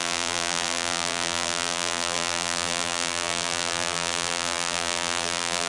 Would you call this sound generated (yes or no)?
yes